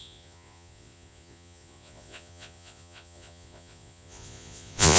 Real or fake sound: fake